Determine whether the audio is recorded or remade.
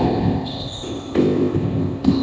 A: remade